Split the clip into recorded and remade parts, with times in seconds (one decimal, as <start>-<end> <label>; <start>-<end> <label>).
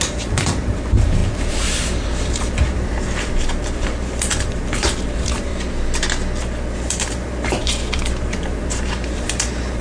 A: 0.0-5.5 remade; 5.5-6.8 recorded; 6.8-7.6 remade; 7.6-8.2 recorded; 8.2-9.8 remade